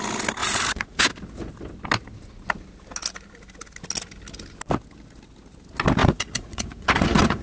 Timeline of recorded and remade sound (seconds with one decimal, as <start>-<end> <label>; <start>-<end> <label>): 0.0-0.4 recorded; 0.4-1.0 remade; 1.0-6.0 recorded; 6.0-7.4 remade